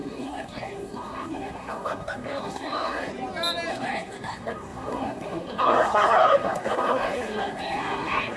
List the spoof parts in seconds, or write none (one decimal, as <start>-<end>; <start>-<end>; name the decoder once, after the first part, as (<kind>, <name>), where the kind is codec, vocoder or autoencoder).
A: 0.0-3.1 (codec, SNAC); 3.7-8.4